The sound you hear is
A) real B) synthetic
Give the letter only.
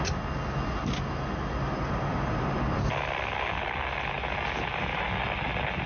A